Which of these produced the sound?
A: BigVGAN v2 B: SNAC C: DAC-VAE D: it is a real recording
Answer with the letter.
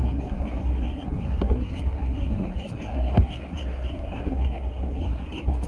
B